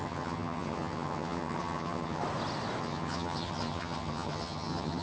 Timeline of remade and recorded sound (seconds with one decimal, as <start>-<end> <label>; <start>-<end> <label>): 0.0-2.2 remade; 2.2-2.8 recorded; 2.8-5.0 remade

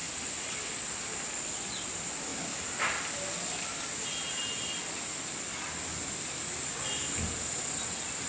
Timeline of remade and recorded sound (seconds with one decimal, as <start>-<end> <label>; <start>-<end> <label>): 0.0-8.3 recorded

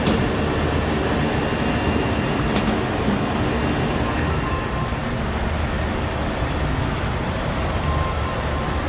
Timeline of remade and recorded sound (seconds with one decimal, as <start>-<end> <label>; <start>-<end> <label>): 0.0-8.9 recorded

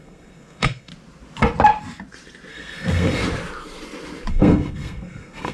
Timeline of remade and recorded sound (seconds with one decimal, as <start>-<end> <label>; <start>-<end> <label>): 0.0-0.9 remade; 0.9-2.5 recorded; 2.5-3.2 remade; 3.2-4.3 recorded; 4.3-5.5 remade